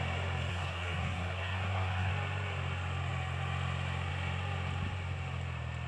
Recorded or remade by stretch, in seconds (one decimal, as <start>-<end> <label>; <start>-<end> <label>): 0.0-0.5 recorded; 0.5-2.1 remade; 2.1-5.9 recorded